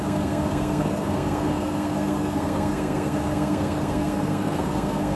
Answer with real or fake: fake